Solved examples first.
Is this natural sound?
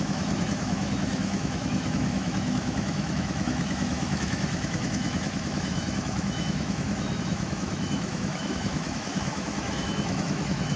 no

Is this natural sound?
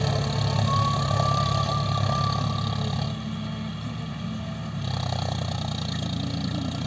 yes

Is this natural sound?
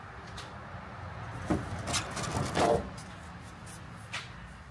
yes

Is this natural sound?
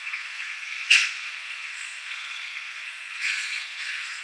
no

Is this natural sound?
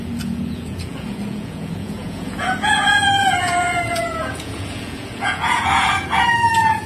no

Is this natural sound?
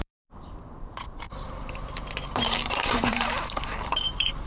no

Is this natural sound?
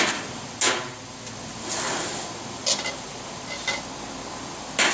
yes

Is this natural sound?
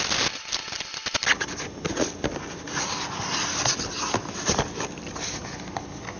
yes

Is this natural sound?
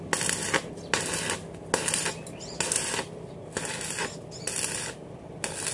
yes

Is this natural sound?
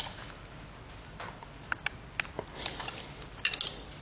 yes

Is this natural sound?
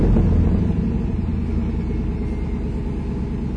yes